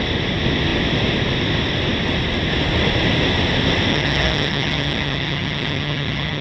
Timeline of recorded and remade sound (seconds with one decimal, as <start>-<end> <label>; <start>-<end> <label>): 0.0-3.9 recorded; 3.9-6.4 remade